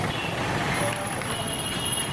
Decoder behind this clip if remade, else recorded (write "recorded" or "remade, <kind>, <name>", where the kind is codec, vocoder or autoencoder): recorded